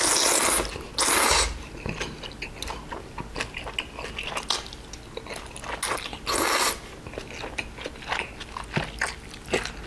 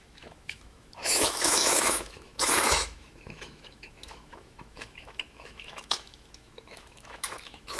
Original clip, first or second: first